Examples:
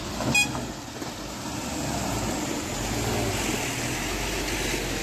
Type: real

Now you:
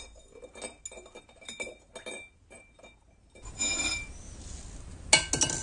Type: real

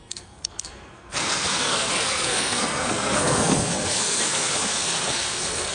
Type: fake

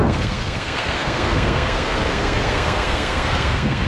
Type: fake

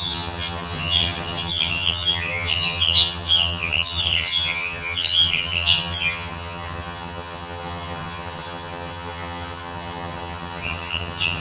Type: fake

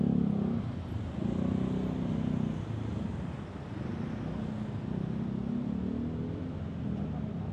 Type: real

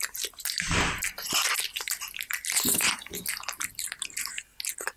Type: real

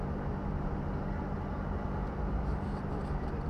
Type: real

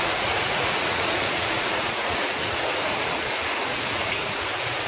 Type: fake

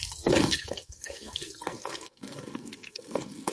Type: fake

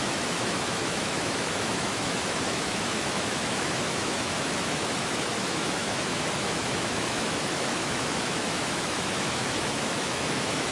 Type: fake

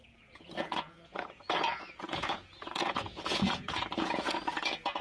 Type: fake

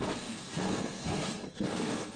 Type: fake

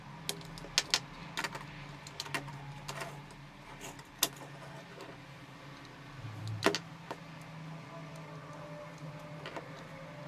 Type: real